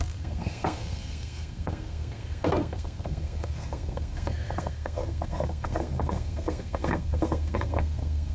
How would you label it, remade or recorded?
remade